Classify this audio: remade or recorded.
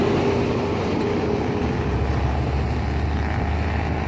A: recorded